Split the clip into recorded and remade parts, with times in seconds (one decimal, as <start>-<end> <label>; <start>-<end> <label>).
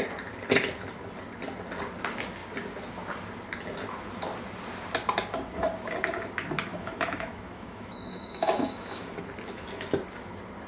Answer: 0.0-6.7 recorded; 6.7-9.2 remade; 9.2-10.7 recorded